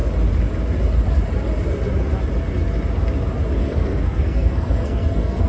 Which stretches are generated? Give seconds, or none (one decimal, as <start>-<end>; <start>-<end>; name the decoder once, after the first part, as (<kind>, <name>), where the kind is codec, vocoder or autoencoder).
3.6-5.5 (codec, SNAC)